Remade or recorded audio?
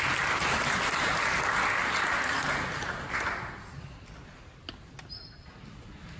recorded